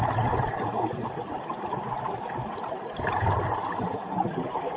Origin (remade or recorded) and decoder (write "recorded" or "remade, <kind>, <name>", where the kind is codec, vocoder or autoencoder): recorded